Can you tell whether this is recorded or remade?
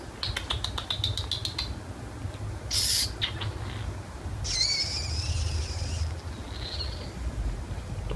recorded